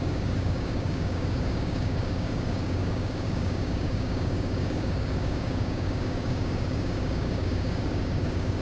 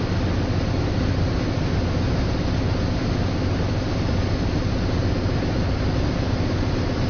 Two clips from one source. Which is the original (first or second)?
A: second